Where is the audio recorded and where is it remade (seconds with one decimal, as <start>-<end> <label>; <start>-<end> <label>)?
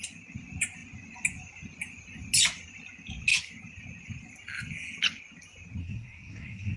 0.0-5.8 recorded; 5.8-6.8 remade